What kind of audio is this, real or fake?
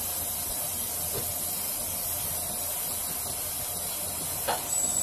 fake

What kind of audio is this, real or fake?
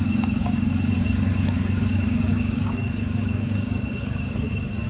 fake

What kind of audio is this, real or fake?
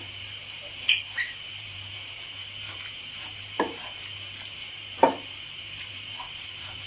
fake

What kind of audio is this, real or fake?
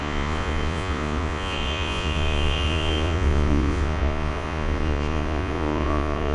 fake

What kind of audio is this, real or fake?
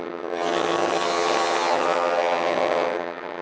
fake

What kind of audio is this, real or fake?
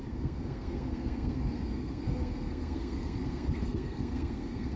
fake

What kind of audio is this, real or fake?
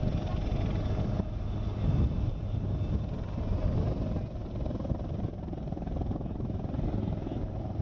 real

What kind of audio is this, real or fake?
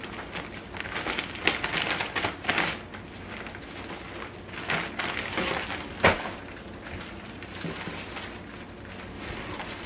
real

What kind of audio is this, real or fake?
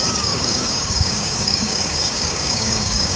fake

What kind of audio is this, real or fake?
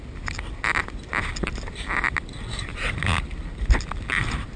real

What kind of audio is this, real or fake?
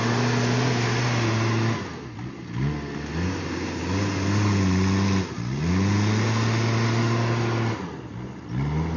real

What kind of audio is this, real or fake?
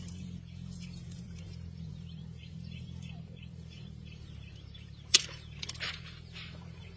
fake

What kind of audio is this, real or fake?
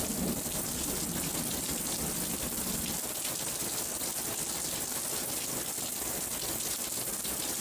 real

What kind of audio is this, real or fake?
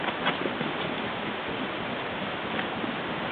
real